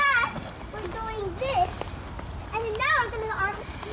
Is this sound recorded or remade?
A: recorded